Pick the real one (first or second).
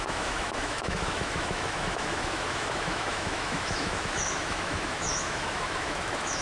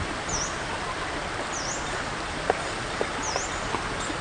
second